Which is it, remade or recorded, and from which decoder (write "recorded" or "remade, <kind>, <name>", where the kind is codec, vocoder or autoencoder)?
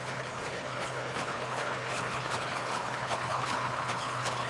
remade, codec, HILCodec